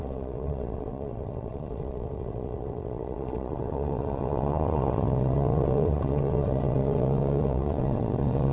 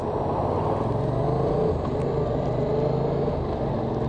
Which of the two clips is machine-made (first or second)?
first